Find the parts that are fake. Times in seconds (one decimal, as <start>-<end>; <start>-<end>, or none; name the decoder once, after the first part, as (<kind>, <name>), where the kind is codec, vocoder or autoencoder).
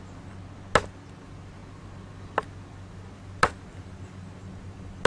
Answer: none